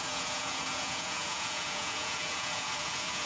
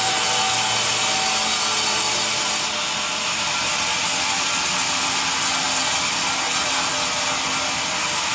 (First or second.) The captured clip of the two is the second